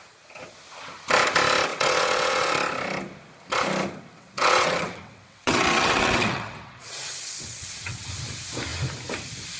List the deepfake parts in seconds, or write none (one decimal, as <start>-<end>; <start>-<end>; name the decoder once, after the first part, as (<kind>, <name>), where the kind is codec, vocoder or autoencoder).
1.7-2.5 (vocoder, WaveNeXt); 4.1-8.1